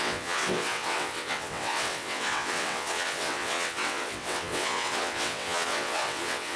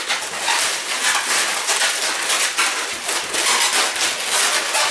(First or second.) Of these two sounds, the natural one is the second